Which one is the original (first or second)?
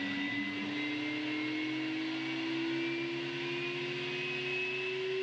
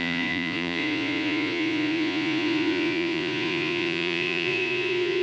first